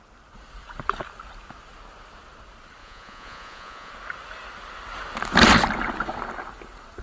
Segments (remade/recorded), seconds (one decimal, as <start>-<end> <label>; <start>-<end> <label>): 0.0-2.8 recorded; 2.8-3.9 remade; 3.9-7.0 recorded